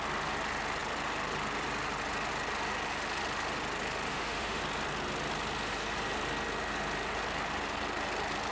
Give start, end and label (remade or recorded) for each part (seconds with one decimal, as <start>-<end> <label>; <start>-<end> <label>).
0.0-4.1 recorded; 4.1-4.6 remade; 4.6-8.5 recorded